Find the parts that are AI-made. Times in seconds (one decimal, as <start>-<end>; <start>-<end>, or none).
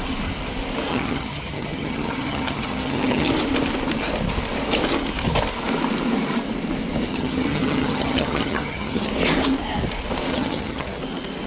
0.9-3.3; 7.1-9.1; 10.3-11.0